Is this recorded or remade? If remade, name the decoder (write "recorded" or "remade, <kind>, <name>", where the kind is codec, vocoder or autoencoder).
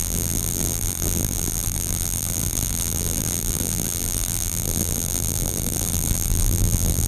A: remade, vocoder, BigVGAN v2